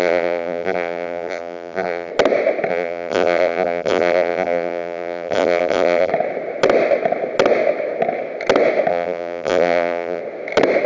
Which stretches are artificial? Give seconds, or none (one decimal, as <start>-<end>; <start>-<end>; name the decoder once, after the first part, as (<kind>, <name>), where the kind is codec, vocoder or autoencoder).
0.0-2.1 (vocoder, BigVGAN v2); 2.7-6.1; 8.9-10.2